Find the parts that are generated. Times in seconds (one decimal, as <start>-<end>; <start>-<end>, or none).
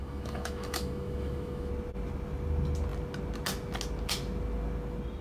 0.0-1.7